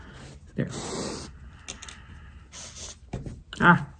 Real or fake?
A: real